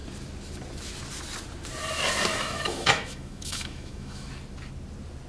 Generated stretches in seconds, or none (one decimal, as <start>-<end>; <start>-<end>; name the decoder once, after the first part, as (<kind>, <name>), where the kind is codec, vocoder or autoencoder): 2.3-4.3 (autoencoder, DAC-VAE)